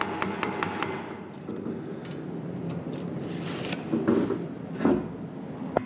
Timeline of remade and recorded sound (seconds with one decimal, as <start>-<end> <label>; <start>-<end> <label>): 0.0-5.9 recorded